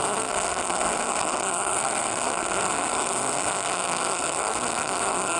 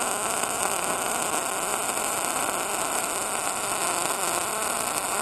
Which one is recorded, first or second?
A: second